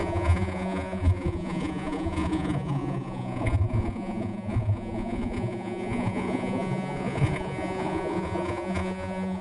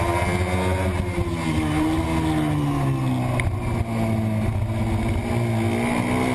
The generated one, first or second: first